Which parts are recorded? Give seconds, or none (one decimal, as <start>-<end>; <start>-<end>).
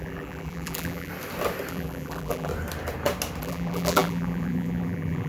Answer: 1.1-1.7; 2.5-3.4